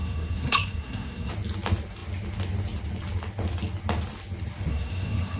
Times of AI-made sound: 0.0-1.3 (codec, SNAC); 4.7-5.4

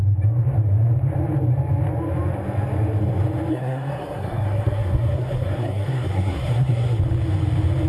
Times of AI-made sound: 3.5-7.0 (codec, SNAC)

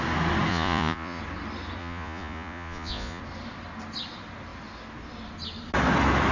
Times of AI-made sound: 0.5-1.2 (vocoder, Vocos); 1.8-3.2

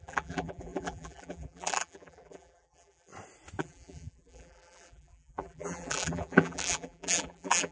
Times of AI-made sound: 0.0-3.1 (vocoder, BigVGAN v2); 3.6-7.7

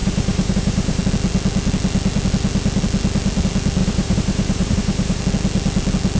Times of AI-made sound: 0.0-1.0 (vocoder, BigVGAN v2); 3.8-5.2

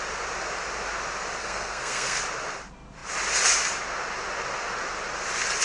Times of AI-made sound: 1.4-2.2 (codec, SNAC)

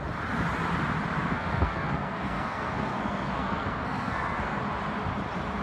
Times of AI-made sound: 1.2-4.6 (codec, SNAC)

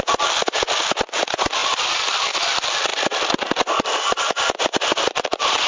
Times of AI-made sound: 2.9-5.7 (vocoder, BigVGAN v2)